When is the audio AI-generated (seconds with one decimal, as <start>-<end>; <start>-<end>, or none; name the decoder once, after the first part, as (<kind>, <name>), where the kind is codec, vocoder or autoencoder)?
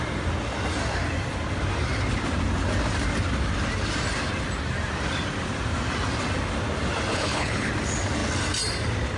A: 7.1-7.7 (codec, HILCodec)